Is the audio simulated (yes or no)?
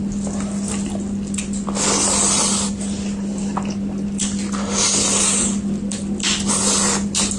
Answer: no